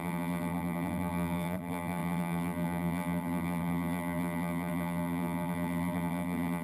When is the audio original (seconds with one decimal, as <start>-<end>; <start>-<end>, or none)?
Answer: none